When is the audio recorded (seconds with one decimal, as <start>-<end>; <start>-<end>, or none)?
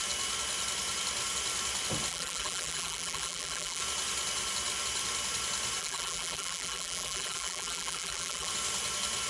0.0-2.1; 3.8-5.8; 8.5-9.3